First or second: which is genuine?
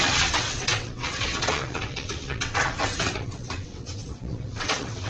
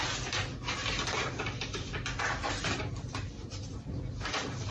second